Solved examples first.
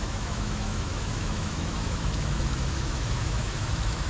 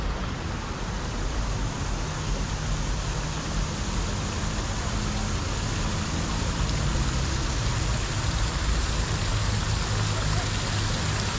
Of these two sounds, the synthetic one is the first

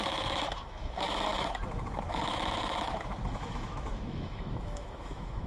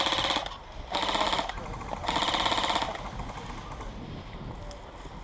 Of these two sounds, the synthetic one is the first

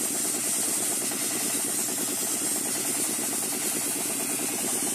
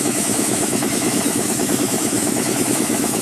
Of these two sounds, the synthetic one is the second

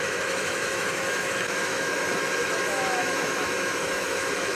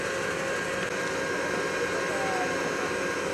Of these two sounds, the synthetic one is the first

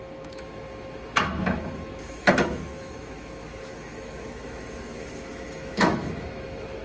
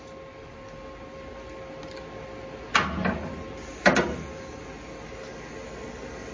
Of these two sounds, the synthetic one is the first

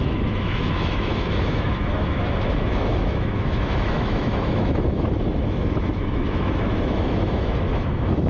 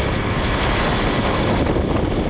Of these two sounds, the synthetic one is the first